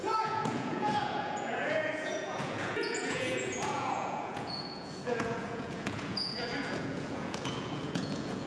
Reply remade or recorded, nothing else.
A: remade